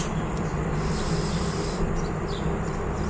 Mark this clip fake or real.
fake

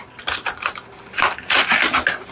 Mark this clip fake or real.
real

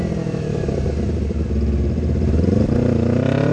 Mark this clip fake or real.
real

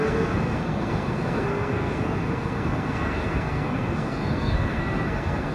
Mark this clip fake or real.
fake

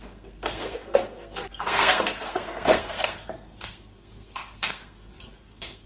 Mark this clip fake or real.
fake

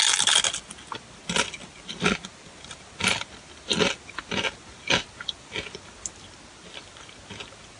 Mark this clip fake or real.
real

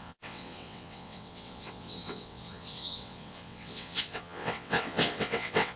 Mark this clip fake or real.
fake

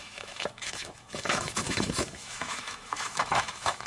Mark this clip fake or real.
fake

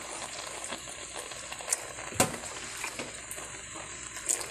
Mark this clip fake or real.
real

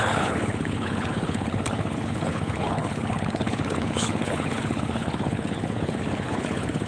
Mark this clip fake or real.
fake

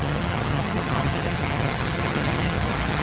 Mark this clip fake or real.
fake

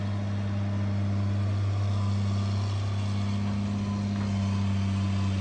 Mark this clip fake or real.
real